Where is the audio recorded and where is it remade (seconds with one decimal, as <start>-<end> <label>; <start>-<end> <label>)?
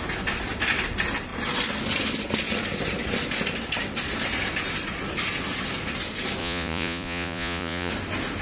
0.0-6.4 recorded; 6.4-7.9 remade; 7.9-8.4 recorded